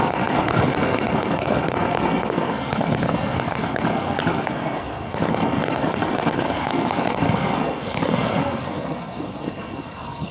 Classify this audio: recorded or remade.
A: remade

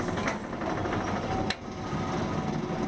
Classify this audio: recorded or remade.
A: recorded